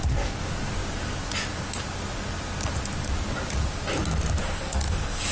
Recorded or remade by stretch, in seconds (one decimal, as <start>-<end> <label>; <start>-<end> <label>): 0.0-4.4 recorded; 4.4-5.3 remade